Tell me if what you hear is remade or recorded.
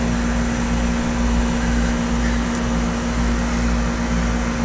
recorded